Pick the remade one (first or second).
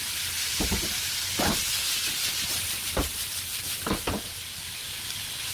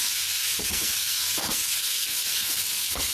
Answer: second